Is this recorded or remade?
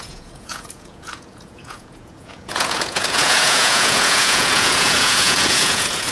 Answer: remade